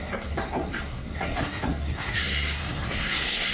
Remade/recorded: remade